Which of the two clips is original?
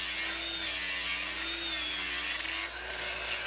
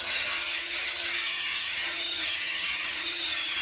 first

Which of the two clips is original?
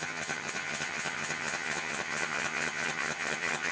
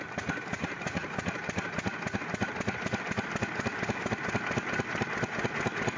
second